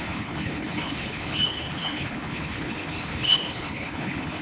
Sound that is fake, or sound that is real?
fake